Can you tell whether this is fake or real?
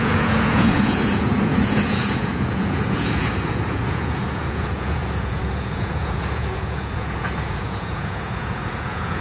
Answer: fake